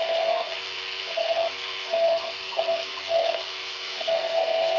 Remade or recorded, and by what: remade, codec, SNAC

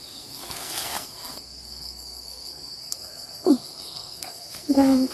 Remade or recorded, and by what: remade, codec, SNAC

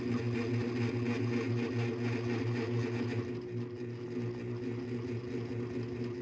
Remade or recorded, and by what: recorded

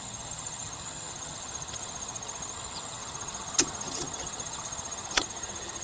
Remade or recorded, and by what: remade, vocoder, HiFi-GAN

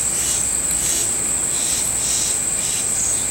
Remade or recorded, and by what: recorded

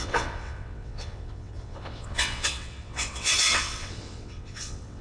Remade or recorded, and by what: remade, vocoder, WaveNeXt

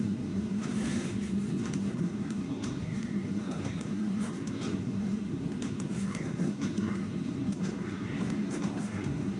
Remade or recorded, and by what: remade, codec, SNAC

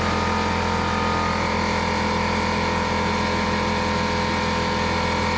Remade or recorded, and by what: recorded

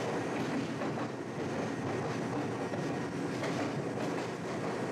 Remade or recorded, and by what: recorded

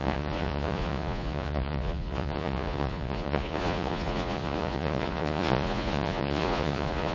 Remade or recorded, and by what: remade, vocoder, Vocos